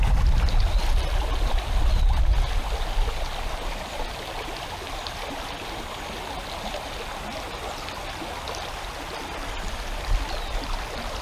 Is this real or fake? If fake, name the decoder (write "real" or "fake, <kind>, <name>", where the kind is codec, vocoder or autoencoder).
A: real